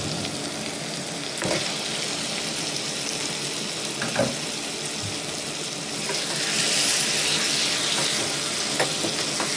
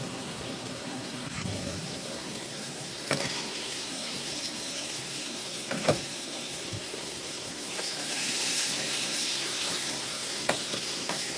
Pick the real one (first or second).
first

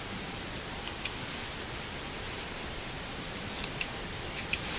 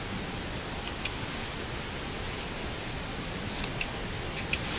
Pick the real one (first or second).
second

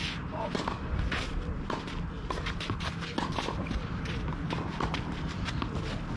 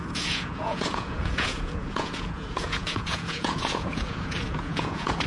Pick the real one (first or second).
first